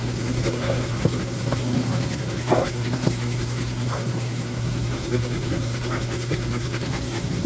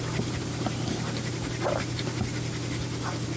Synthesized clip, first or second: first